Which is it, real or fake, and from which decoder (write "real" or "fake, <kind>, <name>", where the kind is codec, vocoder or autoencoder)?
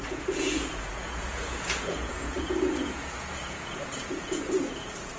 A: fake, vocoder, Vocos